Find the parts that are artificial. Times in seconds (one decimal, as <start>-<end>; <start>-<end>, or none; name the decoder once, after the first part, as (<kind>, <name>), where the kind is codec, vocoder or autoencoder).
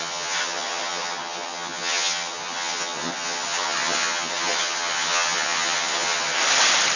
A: 0.0-6.4 (vocoder, HiFi-GAN)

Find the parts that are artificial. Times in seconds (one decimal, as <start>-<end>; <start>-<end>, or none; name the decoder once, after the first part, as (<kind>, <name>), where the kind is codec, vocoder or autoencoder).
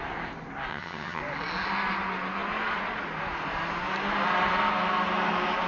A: 0.7-1.2 (vocoder, HiFi-GAN)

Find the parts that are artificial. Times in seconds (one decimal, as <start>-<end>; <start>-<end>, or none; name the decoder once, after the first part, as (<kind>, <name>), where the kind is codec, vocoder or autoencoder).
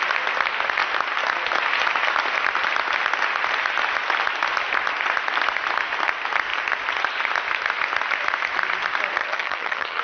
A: 9.2-10.0 (vocoder, HiFi-GAN)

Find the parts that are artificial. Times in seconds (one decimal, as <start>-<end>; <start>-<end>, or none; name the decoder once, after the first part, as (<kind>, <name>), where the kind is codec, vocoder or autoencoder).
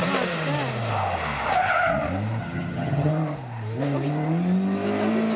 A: 2.4-3.1 (vocoder, HiFi-GAN)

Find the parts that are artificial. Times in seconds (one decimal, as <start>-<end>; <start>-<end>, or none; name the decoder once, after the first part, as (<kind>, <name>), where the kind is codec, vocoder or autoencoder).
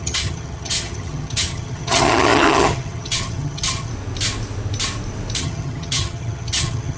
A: 0.0-3.9 (vocoder, HiFi-GAN); 5.4-7.0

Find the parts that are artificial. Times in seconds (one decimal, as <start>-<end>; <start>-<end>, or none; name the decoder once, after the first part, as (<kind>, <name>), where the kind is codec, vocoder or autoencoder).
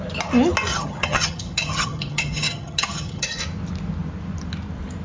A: 0.7-3.4 (vocoder, HiFi-GAN)